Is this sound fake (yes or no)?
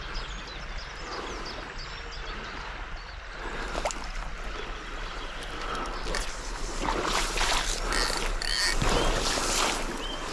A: no